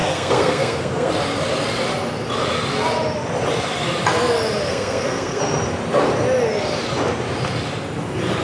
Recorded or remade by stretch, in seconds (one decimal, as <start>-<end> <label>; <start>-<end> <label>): 0.0-1.1 remade; 1.1-4.7 recorded; 4.7-5.4 remade; 5.4-8.4 recorded